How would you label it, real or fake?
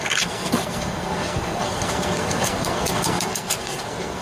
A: fake